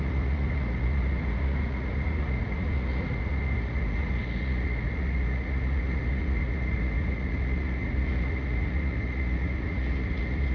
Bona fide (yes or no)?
no